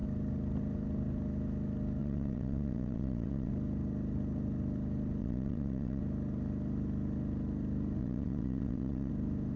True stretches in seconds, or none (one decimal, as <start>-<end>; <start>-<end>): 0.0-2.0; 3.5-5.2; 6.0-8.0; 9.1-9.6